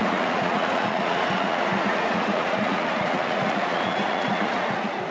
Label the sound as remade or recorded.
remade